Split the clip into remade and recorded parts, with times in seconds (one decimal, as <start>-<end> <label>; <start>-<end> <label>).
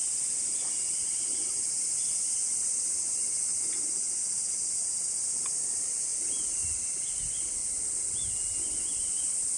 0.0-9.6 recorded